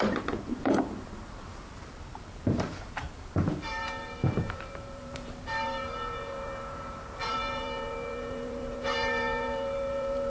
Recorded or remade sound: remade